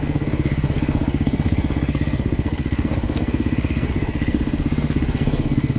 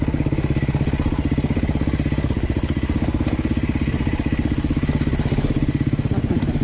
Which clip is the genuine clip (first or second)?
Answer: second